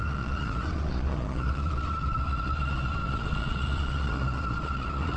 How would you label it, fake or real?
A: fake